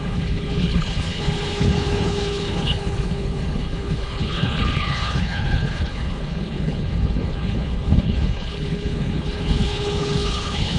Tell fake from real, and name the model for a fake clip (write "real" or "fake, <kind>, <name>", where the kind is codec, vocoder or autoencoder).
fake, codec, HILCodec